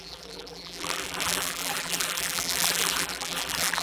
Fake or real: fake